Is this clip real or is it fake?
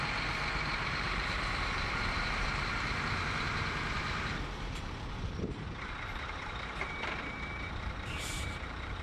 fake